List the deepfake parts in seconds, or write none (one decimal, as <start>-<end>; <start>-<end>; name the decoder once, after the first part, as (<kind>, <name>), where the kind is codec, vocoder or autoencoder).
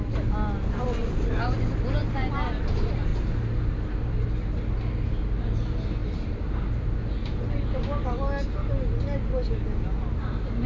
none